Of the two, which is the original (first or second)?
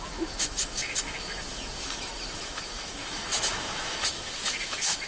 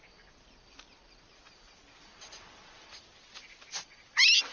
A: second